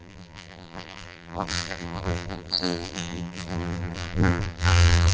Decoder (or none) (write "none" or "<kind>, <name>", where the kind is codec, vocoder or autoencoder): vocoder, BigVGAN v2